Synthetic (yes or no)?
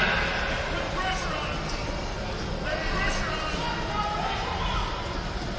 no